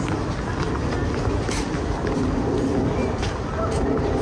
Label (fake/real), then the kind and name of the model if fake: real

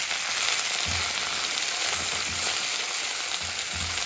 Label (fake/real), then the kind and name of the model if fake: real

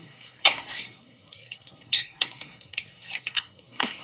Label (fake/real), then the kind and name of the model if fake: fake, codec, SNAC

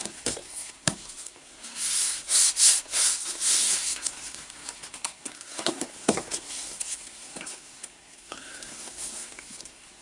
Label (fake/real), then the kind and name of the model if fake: fake, codec, SNAC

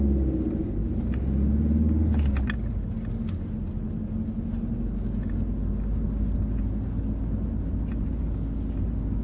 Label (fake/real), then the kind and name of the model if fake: real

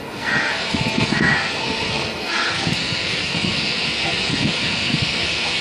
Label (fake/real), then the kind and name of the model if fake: fake, codec, SNAC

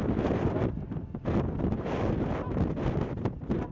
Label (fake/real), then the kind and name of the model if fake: real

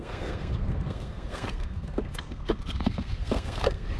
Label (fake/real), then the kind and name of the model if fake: fake, codec, SNAC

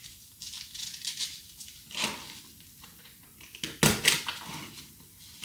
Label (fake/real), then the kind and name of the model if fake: real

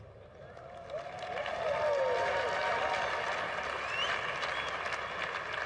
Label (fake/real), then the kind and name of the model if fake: real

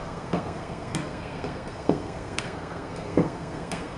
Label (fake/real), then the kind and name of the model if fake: fake, codec, SNAC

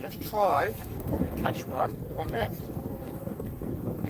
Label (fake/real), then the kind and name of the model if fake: fake, codec, SNAC